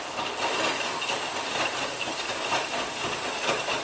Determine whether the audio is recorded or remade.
recorded